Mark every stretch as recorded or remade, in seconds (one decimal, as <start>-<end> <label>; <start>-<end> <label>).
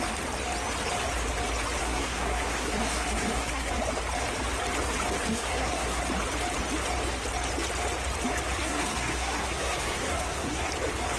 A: 0.0-1.8 recorded; 1.8-3.7 remade; 3.7-5.3 recorded; 5.3-6.0 remade; 6.0-8.6 recorded; 8.6-10.7 remade; 10.7-11.2 recorded